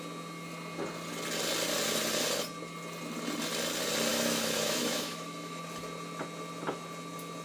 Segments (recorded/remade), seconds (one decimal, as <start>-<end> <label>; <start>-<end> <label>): 0.0-4.1 recorded; 4.1-5.6 remade; 5.6-7.4 recorded